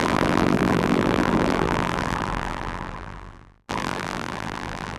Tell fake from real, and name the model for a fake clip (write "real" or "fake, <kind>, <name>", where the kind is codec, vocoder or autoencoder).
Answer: fake, vocoder, BigVGAN v2